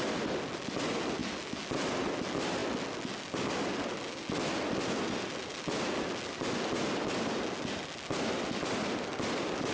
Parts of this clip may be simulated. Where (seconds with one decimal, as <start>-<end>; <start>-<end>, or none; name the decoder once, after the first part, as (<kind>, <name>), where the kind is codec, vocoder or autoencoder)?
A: none

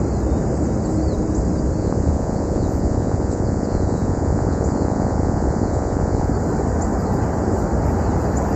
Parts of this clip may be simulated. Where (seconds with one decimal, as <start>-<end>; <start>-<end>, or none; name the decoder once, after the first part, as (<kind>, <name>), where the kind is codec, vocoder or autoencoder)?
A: 1.8-6.3 (vocoder, Vocos)

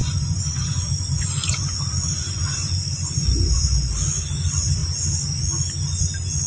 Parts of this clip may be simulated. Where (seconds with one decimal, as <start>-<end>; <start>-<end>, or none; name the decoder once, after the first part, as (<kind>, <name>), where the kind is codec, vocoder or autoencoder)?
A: 0.0-3.9 (vocoder, Vocos)

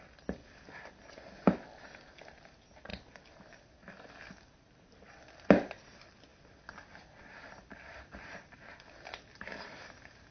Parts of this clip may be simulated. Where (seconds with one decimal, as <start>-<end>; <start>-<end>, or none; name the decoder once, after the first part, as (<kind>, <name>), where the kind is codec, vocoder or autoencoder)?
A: none

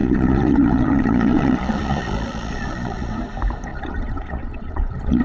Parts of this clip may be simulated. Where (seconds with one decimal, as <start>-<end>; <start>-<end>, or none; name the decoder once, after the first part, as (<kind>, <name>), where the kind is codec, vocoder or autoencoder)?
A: 0.0-3.1 (vocoder, Vocos); 3.7-5.2

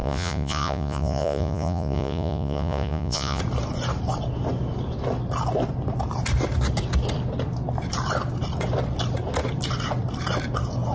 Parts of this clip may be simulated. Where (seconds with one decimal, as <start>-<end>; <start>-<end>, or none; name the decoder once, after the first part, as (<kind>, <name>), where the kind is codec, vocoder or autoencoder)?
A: 0.0-3.4 (vocoder, Vocos)

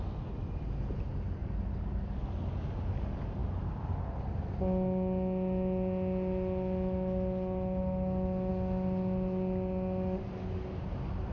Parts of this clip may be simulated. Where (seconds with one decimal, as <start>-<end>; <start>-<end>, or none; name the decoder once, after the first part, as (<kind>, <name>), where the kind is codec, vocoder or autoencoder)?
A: none

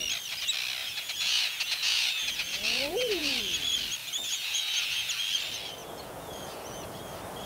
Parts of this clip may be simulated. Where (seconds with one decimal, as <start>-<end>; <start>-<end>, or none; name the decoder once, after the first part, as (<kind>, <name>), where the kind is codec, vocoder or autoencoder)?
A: 0.8-3.4 (vocoder, Vocos); 4.0-5.1; 5.8-7.0